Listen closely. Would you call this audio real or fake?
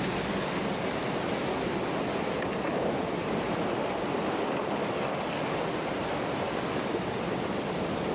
real